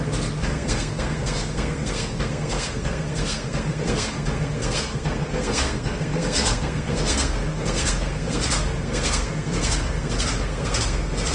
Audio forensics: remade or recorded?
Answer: remade